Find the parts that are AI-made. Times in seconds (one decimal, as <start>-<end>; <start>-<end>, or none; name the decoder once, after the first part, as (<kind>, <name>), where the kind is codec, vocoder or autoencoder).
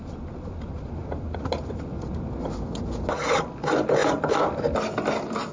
none